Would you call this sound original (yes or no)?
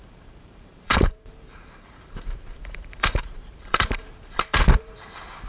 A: no